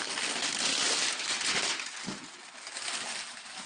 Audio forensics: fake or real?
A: real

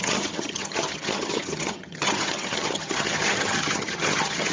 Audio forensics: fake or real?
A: fake